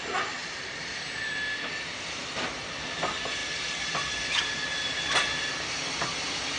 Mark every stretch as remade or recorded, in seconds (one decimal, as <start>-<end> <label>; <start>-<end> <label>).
0.0-6.6 recorded